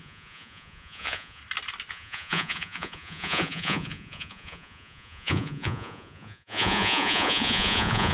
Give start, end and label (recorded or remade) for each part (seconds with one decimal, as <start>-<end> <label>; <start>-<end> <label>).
0.0-1.4 remade; 1.4-1.9 recorded; 1.9-8.1 remade